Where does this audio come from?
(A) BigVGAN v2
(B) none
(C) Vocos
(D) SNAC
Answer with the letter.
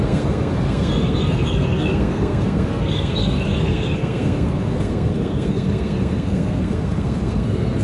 D